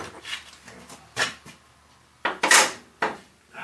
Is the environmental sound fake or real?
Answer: real